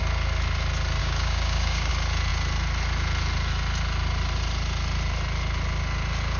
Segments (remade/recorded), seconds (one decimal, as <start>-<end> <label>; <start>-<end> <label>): 0.0-1.0 recorded; 1.0-1.9 remade; 1.9-6.4 recorded